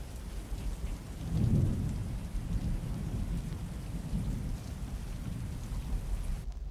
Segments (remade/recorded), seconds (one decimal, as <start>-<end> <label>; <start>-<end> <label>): 0.0-6.7 recorded